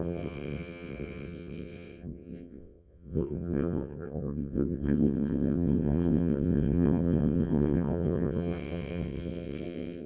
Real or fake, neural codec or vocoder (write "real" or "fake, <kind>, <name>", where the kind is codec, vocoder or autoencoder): fake, vocoder, WaveNeXt